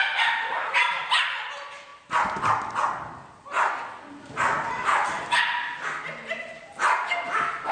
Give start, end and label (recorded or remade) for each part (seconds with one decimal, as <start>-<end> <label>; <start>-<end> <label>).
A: 0.0-7.7 recorded